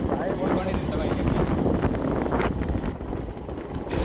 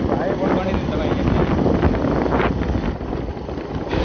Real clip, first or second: second